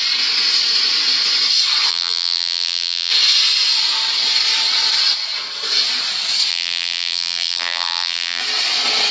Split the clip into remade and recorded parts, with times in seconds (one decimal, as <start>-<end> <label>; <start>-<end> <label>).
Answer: 0.0-1.9 recorded; 1.9-3.1 remade; 3.1-6.5 recorded; 6.5-8.4 remade; 8.4-9.1 recorded